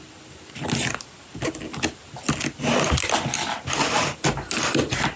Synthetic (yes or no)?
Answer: no